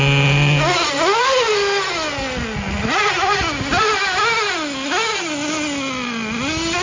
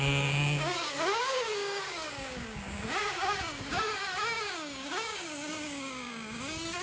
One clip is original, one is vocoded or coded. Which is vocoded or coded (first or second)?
second